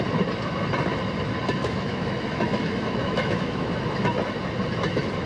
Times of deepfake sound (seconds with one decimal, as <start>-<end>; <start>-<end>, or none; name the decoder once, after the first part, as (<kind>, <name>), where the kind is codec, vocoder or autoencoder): 1.6-3.8 (autoencoder, DAC-VAE)